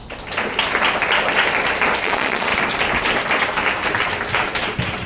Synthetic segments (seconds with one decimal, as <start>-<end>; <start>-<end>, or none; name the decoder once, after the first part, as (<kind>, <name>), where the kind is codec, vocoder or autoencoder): 2.0-2.5 (vocoder, Vocos)